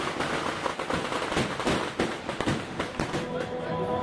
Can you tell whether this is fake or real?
real